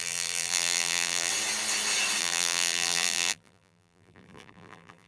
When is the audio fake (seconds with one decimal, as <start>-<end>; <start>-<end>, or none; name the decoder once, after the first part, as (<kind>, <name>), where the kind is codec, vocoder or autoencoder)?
0.0-1.3 (vocoder, BigVGAN v2); 2.2-5.1